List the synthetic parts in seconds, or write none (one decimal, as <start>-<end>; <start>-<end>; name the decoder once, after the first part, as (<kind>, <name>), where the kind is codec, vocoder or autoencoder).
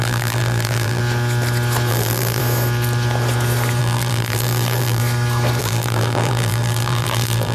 0.0-1.0 (vocoder, BigVGAN v2); 1.9-2.4; 3.8-5.0; 5.6-7.5